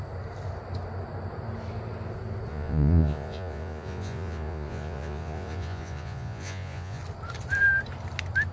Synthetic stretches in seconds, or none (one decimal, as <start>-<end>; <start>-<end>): 2.5-7.0